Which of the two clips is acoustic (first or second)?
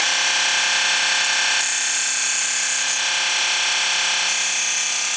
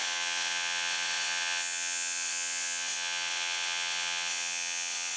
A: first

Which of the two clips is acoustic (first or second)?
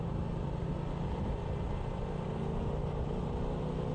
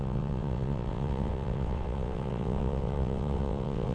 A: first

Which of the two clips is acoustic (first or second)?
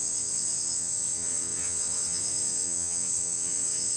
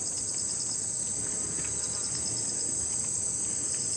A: second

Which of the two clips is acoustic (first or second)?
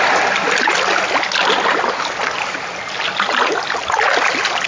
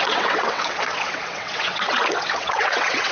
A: first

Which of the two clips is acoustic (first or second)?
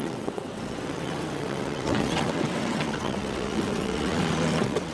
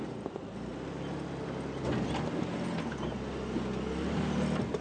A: second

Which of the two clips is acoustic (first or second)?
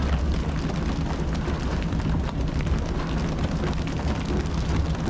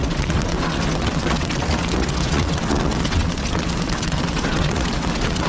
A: first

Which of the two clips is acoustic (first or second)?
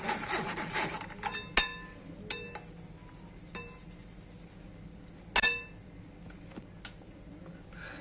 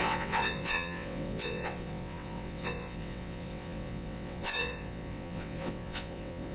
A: first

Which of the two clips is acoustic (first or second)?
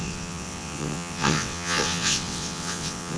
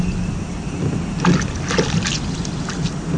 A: second